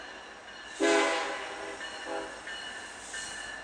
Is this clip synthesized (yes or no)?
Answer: no